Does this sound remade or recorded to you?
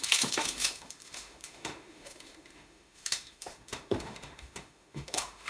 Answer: remade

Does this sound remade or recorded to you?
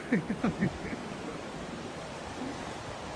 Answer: recorded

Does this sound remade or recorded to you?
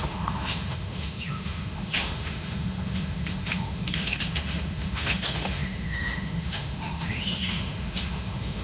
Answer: remade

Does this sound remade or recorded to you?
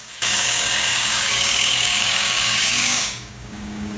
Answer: remade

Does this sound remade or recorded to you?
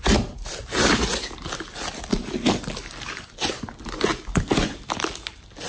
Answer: recorded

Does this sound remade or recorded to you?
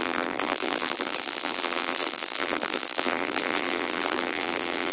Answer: remade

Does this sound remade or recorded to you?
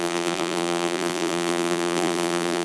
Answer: remade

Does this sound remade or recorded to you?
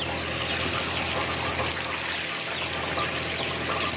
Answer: recorded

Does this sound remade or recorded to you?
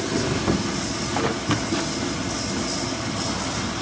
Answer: recorded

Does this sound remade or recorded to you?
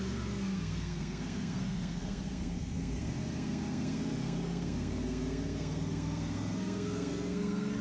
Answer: remade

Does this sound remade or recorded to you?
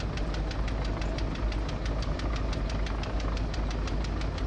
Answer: recorded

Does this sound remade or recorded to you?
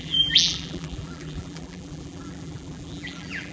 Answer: remade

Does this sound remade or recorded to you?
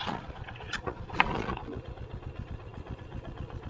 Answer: remade